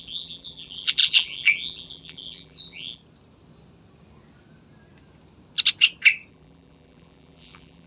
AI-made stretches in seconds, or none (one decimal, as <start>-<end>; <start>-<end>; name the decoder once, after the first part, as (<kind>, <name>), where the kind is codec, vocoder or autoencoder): 0.0-3.0 (vocoder, BigVGAN v2); 6.3-7.9